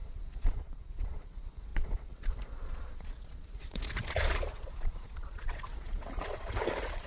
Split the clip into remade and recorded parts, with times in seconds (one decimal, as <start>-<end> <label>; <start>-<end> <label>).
0.0-7.1 remade